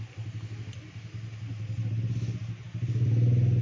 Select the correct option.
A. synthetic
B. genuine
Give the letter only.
B